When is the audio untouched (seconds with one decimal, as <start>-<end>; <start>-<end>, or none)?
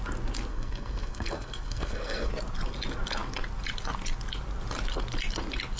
0.0-0.5; 2.3-5.8